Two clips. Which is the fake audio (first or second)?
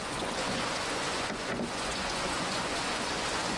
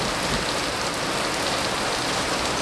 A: first